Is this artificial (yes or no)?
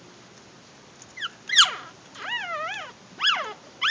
no